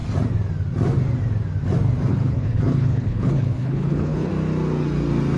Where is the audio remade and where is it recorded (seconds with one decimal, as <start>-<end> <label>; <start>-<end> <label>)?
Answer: 0.0-2.1 recorded; 2.1-4.3 remade; 4.3-5.4 recorded